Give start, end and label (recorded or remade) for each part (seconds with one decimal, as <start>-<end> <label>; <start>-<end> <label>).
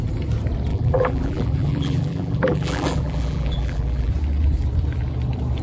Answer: 0.0-0.7 recorded; 0.7-4.1 remade; 4.1-5.6 recorded